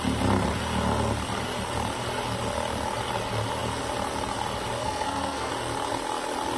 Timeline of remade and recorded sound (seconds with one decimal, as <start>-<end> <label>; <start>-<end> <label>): 0.0-4.8 recorded; 4.8-5.5 remade; 5.5-6.6 recorded